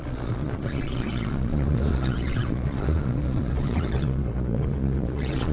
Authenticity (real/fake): fake